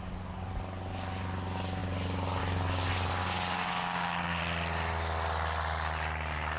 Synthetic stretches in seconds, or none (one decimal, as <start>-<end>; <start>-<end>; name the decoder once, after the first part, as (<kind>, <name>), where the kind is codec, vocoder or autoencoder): 3.2-4.4 (codec, DAC)